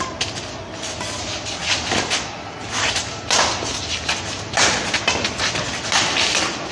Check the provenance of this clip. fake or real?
real